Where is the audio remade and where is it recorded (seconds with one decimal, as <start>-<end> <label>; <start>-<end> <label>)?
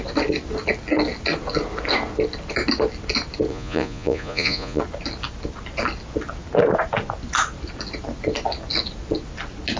0.0-3.5 recorded; 3.5-4.8 remade; 4.8-9.8 recorded